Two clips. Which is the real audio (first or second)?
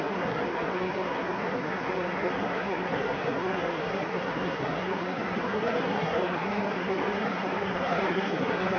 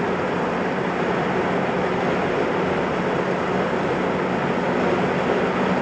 second